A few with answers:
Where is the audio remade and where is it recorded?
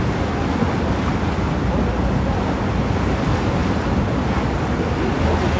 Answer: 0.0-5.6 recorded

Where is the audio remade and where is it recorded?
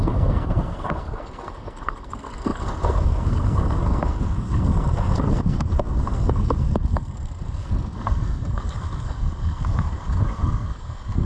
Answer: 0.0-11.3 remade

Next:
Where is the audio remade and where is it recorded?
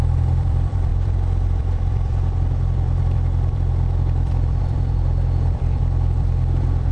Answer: 0.0-6.9 remade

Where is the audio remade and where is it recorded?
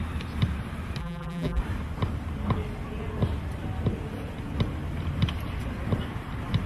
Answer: 0.0-1.0 recorded; 1.0-1.6 remade; 1.6-6.7 recorded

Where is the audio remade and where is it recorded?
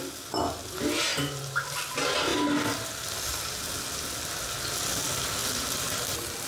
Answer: 0.0-1.1 recorded; 1.1-1.6 remade; 1.6-6.5 recorded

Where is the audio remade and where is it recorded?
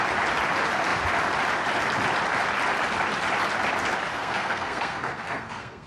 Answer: 0.0-4.1 recorded; 4.1-5.9 remade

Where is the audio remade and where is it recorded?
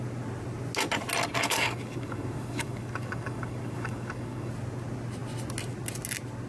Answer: 0.0-1.4 recorded; 1.4-4.5 remade; 4.5-6.5 recorded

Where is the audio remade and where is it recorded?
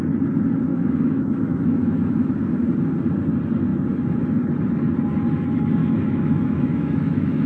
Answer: 0.0-0.7 recorded; 0.7-2.3 remade; 2.3-5.8 recorded; 5.8-7.5 remade